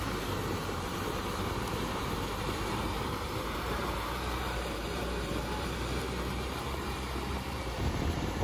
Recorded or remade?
remade